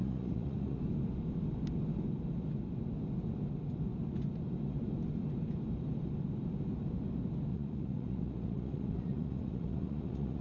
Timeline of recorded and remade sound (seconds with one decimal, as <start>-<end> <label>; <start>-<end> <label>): 0.0-0.8 remade; 0.8-7.5 recorded; 7.5-10.4 remade